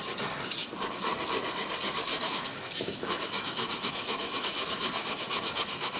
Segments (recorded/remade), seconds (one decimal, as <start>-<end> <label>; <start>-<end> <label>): 0.0-2.1 recorded; 2.1-6.0 remade